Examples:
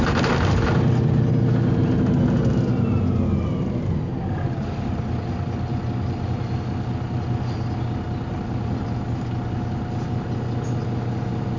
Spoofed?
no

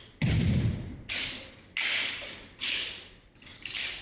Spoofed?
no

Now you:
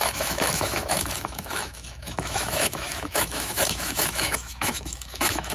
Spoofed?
yes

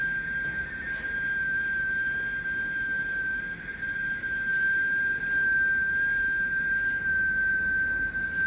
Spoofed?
no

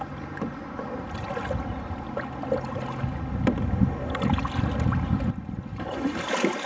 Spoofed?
no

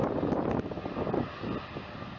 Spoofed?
no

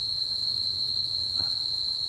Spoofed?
yes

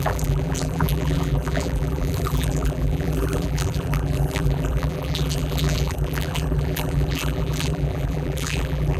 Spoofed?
yes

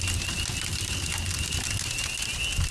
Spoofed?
no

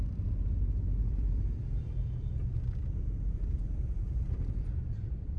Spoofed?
yes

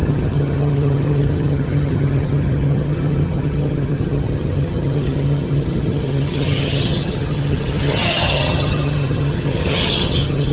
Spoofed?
yes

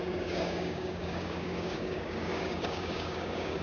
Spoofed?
yes